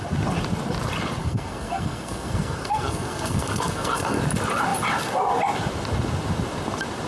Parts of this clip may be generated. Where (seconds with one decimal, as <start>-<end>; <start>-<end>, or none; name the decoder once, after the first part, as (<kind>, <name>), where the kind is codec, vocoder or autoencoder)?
1.2-4.2 (codec, SNAC)